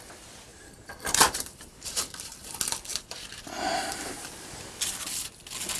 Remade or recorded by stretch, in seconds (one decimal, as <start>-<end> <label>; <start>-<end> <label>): 0.0-0.5 recorded; 0.5-2.3 remade; 2.3-2.9 recorded; 2.9-4.7 remade; 4.7-5.8 recorded